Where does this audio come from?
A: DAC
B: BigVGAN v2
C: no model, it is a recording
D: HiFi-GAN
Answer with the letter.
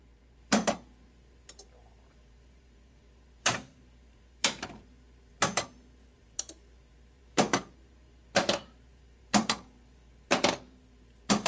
B